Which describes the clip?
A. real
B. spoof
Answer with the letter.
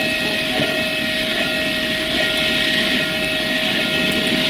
A